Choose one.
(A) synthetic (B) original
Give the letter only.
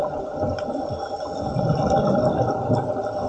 B